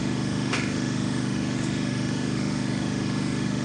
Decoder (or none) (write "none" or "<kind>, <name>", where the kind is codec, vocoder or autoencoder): autoencoder, DAC-VAE